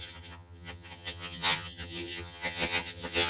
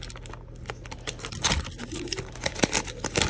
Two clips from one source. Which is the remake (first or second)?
first